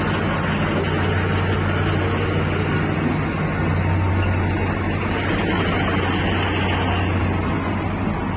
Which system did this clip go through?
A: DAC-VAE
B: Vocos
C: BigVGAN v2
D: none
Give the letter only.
D